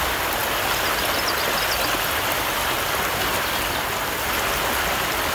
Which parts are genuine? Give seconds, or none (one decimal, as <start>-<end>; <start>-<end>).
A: 0.0-3.1; 3.6-5.3